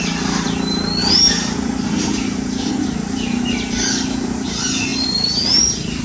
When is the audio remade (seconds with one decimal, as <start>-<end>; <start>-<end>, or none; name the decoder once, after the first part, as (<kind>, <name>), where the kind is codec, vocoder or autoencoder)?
1.0-2.7 (vocoder, BigVGAN v2)